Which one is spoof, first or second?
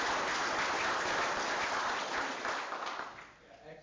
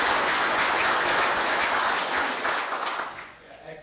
second